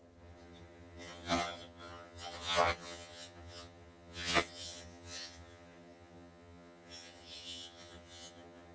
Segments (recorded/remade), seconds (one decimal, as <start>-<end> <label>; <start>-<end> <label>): 0.0-8.7 remade